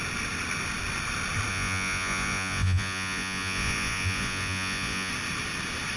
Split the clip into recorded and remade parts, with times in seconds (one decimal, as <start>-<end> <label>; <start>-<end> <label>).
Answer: 0.0-1.5 recorded; 1.5-5.1 remade; 5.1-6.0 recorded